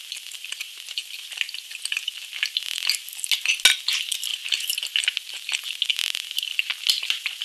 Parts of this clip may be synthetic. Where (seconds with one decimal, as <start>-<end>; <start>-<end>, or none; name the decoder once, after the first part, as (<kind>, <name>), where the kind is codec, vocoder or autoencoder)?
none